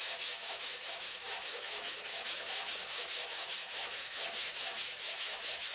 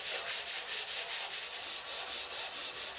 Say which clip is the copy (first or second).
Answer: first